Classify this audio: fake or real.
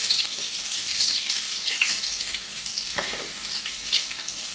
fake